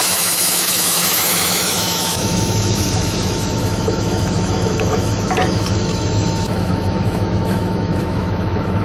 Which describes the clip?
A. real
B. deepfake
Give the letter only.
B